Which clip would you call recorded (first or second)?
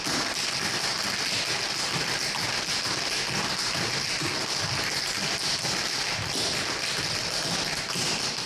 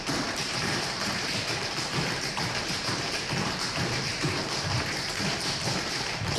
first